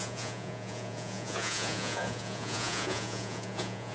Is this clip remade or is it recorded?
remade